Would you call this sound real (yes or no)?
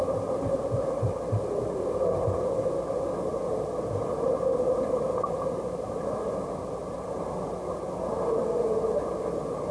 yes